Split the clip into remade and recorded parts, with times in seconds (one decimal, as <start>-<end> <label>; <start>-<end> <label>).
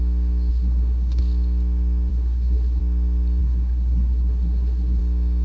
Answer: 0.0-0.5 recorded; 0.5-1.2 remade; 1.2-2.1 recorded; 2.1-2.8 remade; 2.8-3.4 recorded; 3.4-5.0 remade; 5.0-5.4 recorded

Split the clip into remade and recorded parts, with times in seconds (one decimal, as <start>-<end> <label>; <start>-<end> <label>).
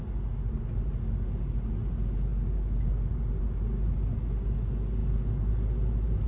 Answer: 0.0-6.3 recorded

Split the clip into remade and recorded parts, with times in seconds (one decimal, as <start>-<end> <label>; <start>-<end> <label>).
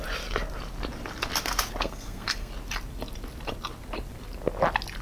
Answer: 0.0-1.8 recorded; 1.8-2.5 remade; 2.5-5.0 recorded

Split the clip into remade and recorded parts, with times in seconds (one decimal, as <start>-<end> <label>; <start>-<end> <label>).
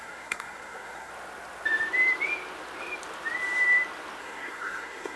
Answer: 0.0-1.1 remade; 1.1-4.2 recorded; 4.2-5.2 remade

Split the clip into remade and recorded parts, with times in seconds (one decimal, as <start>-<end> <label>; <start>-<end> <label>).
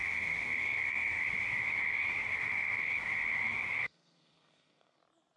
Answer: 0.0-1.2 remade; 1.2-2.4 recorded; 2.4-2.9 remade; 2.9-3.8 recorded; 3.8-5.0 remade; 5.0-5.4 recorded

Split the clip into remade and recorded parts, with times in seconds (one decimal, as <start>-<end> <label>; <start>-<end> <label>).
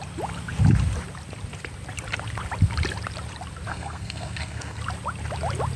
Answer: 0.0-3.7 recorded; 3.7-4.8 remade; 4.8-5.8 recorded